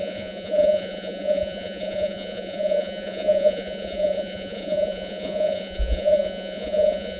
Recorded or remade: remade